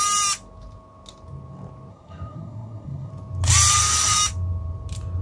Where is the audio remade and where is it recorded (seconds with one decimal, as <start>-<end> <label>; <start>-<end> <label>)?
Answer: 0.0-1.9 recorded; 1.9-3.1 remade; 3.1-5.2 recorded